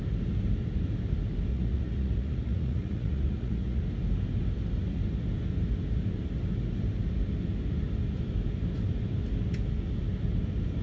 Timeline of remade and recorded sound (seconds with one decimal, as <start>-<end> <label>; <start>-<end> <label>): 0.0-1.5 recorded; 1.5-3.8 remade; 3.8-10.8 recorded